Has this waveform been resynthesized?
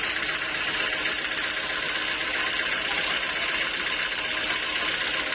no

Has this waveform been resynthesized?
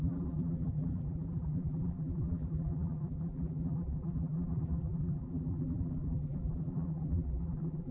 yes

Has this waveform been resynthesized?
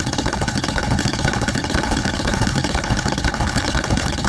yes